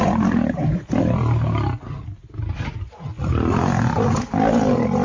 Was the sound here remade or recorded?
recorded